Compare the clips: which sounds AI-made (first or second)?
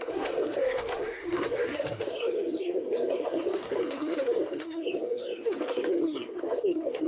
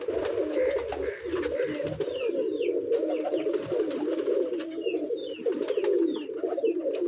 first